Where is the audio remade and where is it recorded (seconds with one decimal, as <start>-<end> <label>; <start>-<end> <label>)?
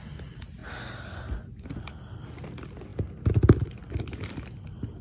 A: 0.0-5.0 recorded